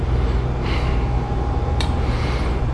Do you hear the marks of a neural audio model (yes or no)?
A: yes